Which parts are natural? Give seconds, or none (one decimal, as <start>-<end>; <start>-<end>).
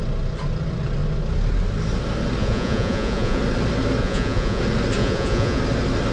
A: 0.0-2.4; 3.4-4.0; 4.6-5.0; 5.6-6.1